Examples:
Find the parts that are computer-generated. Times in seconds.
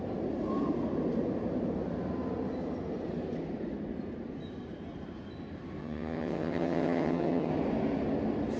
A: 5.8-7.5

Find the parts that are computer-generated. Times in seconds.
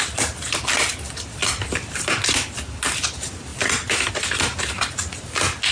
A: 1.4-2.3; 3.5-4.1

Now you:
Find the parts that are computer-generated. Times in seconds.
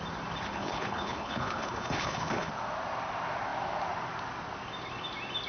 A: 0.5-2.5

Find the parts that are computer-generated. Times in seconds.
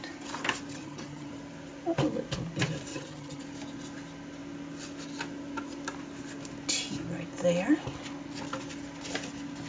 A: 0.7-1.3; 2.9-3.4